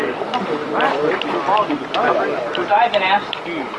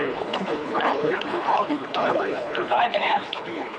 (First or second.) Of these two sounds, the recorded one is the first